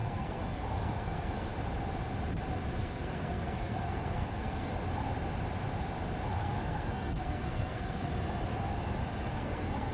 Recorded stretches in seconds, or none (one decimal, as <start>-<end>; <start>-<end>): 1.5-2.8; 4.7-6.3; 8.1-9.3